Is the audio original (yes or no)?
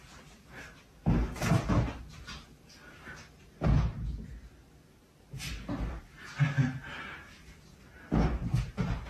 yes